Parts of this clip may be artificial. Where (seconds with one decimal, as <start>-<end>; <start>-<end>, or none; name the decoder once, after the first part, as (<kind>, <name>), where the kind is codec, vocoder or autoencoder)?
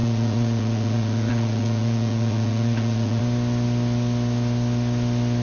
0.0-3.2 (vocoder, Vocos)